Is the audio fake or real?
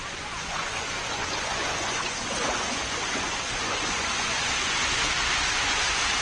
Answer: fake